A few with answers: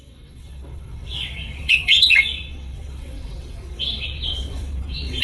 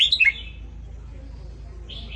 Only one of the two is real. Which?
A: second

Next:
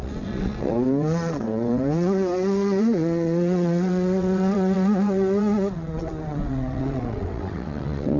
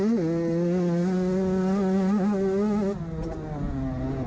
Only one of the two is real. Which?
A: second